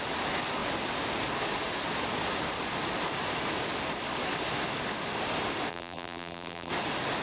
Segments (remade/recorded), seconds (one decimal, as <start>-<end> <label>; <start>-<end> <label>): 0.0-5.7 recorded; 5.7-6.7 remade; 6.7-7.2 recorded